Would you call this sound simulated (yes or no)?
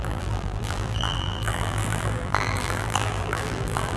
yes